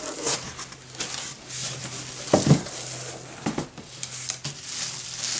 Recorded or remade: recorded